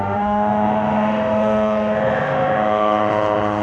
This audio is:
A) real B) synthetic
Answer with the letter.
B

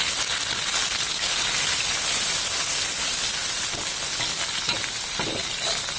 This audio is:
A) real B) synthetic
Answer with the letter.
A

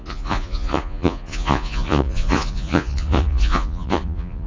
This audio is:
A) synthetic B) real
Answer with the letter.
A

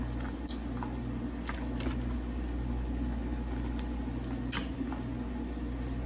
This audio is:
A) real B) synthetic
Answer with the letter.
A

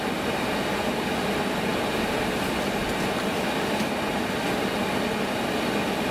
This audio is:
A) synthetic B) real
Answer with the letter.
B